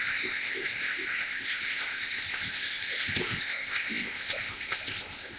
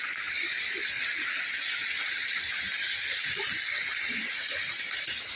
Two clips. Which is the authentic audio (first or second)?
second